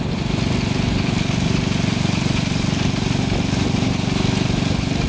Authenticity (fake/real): real